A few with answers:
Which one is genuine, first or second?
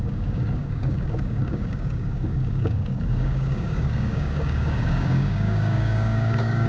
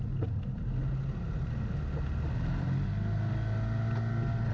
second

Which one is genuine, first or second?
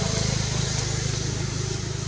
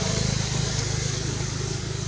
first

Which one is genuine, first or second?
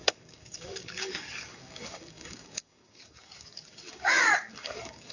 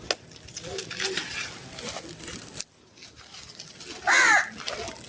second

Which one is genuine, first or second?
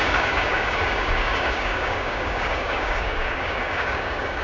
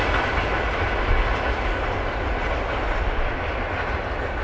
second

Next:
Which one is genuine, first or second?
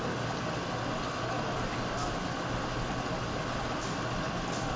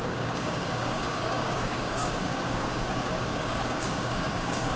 first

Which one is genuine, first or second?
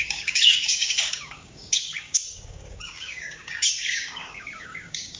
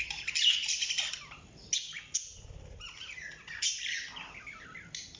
second